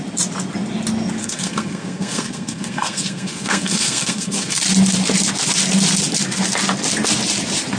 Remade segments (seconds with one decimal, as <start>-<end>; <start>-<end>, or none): 1.2-4.6